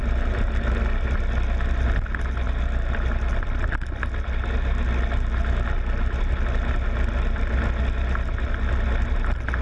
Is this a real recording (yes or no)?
yes